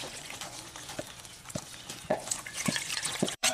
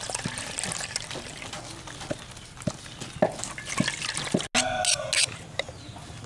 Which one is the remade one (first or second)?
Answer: first